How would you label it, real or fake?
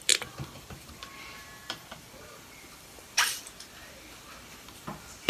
fake